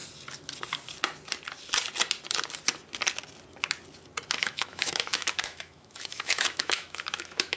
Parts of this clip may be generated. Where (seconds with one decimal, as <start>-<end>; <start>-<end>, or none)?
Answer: 4.4-7.6